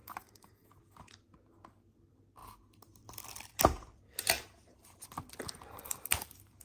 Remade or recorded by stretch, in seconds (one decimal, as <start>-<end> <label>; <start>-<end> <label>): 0.0-0.7 remade; 0.7-4.8 recorded; 4.8-6.6 remade